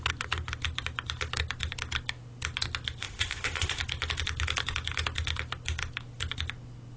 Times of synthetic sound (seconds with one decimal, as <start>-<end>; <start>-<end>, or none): 3.0-3.8